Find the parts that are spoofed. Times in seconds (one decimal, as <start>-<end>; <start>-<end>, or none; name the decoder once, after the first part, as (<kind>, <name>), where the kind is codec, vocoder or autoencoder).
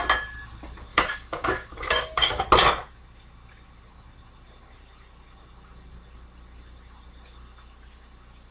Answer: 0.9-2.4 (codec, DAC)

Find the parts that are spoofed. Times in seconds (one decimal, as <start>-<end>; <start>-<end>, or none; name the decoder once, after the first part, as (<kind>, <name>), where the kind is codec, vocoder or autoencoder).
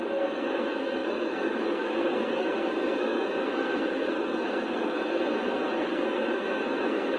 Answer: 0.0-7.2 (codec, SNAC)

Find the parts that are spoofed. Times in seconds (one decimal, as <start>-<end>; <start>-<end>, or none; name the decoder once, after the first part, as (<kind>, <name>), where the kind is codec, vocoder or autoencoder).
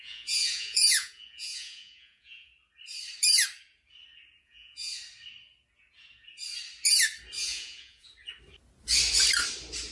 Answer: 0.0-2.5 (vocoder, Vocos); 4.4-5.0; 7.4-8.1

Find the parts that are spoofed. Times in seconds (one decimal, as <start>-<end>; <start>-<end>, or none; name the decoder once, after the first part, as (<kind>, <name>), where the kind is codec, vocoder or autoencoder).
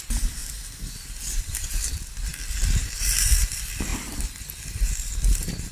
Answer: 0.0-0.4 (vocoder, BigVGAN v2); 1.4-2.3; 3.4-3.9; 4.9-5.7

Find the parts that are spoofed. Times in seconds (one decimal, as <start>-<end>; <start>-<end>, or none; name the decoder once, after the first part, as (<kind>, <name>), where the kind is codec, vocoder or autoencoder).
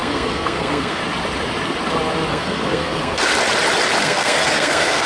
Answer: 0.0-1.0 (codec, SNAC); 2.3-3.3; 4.0-5.1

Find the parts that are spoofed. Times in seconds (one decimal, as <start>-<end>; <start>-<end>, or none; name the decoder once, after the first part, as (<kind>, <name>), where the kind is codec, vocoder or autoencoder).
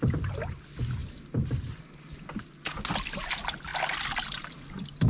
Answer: none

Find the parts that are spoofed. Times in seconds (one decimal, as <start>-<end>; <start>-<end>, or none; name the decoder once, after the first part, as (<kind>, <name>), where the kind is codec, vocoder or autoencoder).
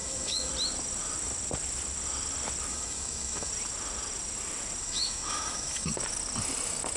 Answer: 0.0-0.5 (autoencoder, DAC-VAE); 2.7-3.5; 4.8-5.9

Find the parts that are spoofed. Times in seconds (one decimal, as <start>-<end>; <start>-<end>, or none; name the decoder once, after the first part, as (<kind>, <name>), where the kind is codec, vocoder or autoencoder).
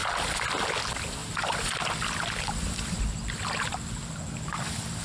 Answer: none